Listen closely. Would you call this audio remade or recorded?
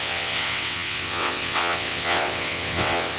remade